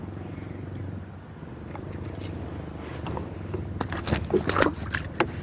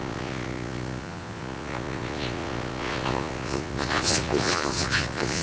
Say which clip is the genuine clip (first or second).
first